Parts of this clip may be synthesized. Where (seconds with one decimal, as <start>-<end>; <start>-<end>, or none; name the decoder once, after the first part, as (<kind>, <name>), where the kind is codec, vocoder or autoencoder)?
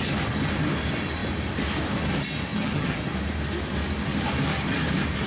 2.5-3.0 (vocoder, HiFi-GAN)